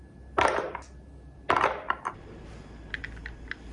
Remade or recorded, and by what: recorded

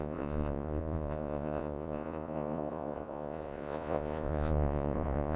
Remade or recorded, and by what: remade, vocoder, Vocos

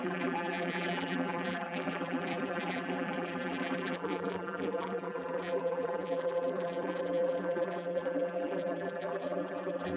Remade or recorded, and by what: remade, vocoder, BigVGAN v2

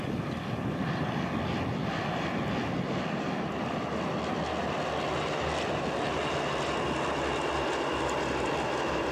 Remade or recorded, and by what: recorded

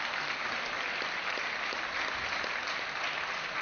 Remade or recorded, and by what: recorded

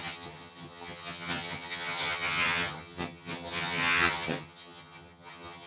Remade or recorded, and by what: remade, vocoder, HiFi-GAN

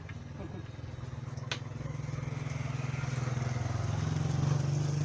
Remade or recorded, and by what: recorded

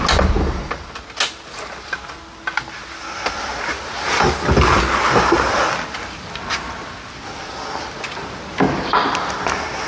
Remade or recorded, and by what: recorded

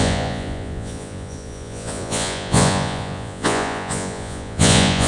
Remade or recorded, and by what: remade, vocoder, Vocos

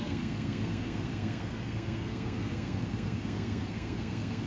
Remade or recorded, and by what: remade, codec, SNAC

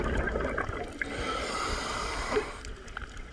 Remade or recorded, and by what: recorded